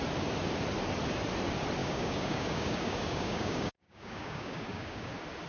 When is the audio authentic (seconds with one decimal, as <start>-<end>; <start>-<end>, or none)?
0.0-1.8; 5.1-5.5